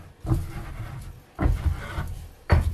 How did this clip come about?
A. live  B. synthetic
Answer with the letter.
B